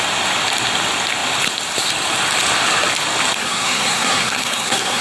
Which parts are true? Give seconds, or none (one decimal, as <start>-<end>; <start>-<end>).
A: 0.0-3.4